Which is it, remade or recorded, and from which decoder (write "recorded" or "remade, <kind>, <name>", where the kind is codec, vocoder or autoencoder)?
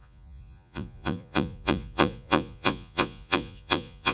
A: remade, vocoder, Vocos